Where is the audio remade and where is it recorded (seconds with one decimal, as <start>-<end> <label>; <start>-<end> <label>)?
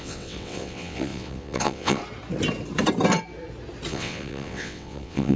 0.0-2.0 remade; 2.0-3.9 recorded; 3.9-5.4 remade